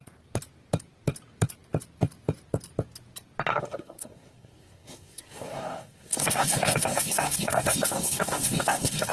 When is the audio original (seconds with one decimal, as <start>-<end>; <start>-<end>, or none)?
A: 0.0-3.5